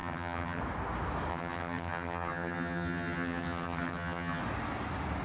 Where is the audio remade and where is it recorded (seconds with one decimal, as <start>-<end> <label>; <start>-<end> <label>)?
0.0-0.6 remade; 0.6-1.3 recorded; 1.3-4.4 remade; 4.4-5.2 recorded